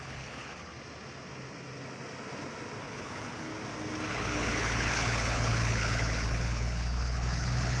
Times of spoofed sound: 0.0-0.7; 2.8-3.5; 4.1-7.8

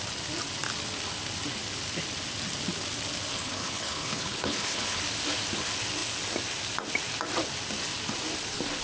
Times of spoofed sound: 3.3-5.0

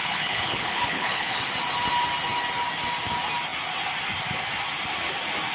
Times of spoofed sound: 0.0-1.5

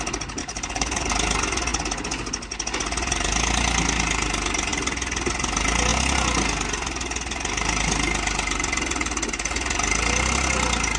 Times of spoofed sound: 0.4-1.1

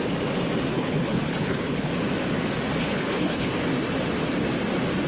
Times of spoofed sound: 0.7-1.9; 2.8-3.5

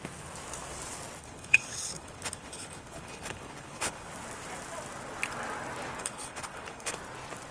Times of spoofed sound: 1.2-4.1; 6.0-6.9

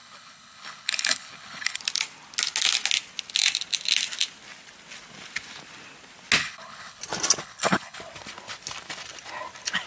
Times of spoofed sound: 0.0-1.8; 6.4-7.0; 7.4-8.0